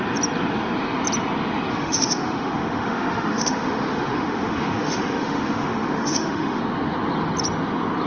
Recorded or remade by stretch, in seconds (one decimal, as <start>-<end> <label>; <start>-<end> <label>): 0.0-1.7 recorded; 1.7-6.6 remade; 6.6-8.1 recorded